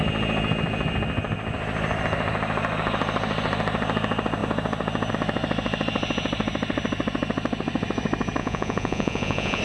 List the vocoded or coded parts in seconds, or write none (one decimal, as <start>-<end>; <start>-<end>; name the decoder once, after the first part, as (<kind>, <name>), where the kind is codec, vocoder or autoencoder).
8.4-9.6 (vocoder, Vocos)